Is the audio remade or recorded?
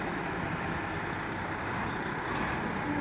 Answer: recorded